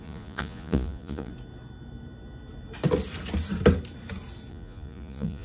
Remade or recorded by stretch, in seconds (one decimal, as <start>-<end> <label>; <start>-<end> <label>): 0.0-1.3 remade; 1.3-4.5 recorded; 4.5-5.4 remade